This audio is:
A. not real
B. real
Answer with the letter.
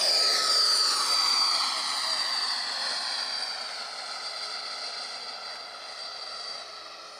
B